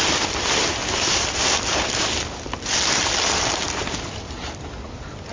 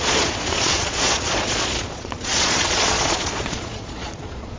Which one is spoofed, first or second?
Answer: second